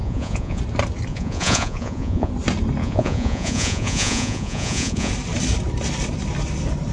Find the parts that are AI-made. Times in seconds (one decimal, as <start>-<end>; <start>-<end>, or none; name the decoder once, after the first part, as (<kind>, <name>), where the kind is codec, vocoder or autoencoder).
0.0-0.6 (vocoder, Vocos); 1.1-2.3; 2.8-5.1